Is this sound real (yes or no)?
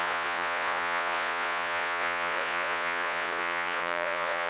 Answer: no